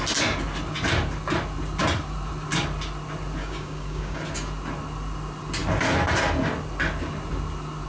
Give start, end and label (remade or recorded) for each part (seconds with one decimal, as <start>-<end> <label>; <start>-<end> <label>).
0.0-3.4 recorded; 3.4-4.2 remade; 4.2-7.9 recorded